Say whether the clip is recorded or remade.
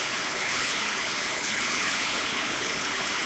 remade